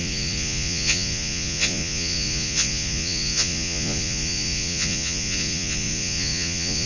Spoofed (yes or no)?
yes